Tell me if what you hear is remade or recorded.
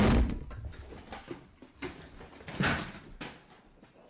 recorded